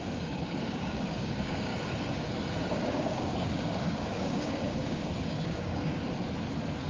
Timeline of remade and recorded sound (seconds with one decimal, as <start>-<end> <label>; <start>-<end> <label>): 0.0-1.7 remade; 1.7-2.6 recorded; 2.6-6.0 remade; 6.0-6.9 recorded